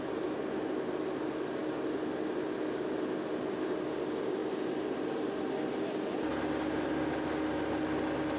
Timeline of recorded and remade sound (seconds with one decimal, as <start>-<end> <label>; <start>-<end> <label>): 0.0-8.4 recorded